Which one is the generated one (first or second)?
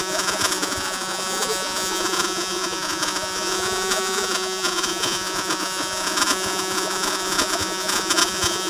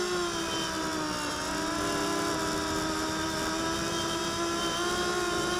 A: first